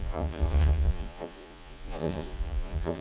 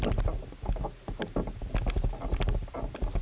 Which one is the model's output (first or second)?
first